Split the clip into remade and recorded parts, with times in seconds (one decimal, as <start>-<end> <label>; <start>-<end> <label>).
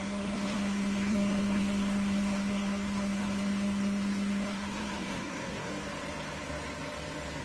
0.0-5.7 remade; 5.7-7.4 recorded